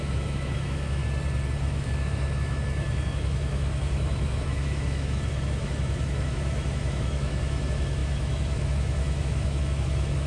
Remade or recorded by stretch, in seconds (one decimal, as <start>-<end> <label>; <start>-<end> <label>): 0.0-1.0 remade; 1.0-1.6 recorded; 1.6-10.3 remade